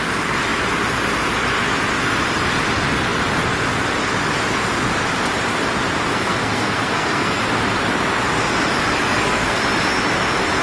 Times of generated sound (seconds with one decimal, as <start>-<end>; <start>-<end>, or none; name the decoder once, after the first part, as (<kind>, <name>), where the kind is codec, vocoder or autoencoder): 6.1-7.4 (codec, SNAC); 9.1-9.6